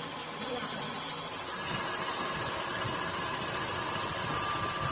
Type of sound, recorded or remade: recorded